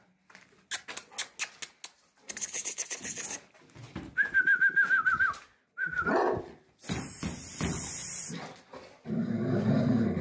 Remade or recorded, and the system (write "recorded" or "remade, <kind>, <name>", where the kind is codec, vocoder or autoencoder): recorded